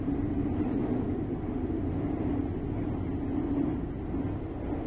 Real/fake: real